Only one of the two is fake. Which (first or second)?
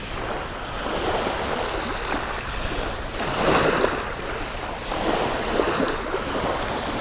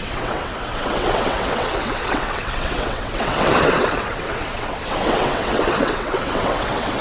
second